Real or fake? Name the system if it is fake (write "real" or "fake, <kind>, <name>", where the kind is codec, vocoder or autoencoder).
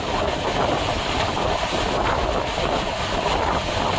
real